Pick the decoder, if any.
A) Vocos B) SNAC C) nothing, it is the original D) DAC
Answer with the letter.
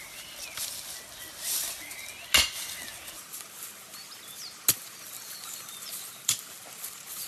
C